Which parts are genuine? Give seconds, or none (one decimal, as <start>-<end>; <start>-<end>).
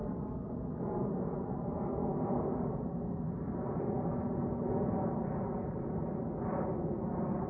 0.0-7.5